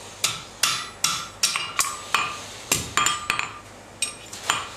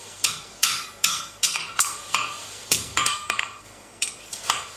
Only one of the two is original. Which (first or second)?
first